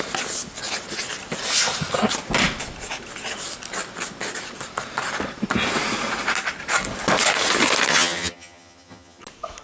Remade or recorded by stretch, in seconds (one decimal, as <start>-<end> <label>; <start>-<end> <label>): 0.0-7.9 recorded; 7.9-9.2 remade; 9.2-9.6 recorded